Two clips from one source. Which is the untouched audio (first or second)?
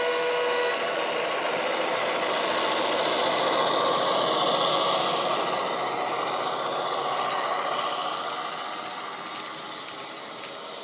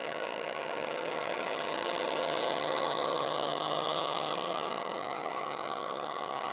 first